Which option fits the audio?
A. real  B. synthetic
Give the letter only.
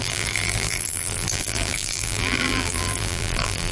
B